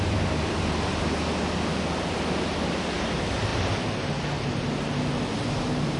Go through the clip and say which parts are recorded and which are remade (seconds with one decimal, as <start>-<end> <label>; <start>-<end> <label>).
0.0-6.0 recorded